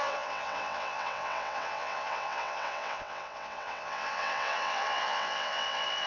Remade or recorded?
remade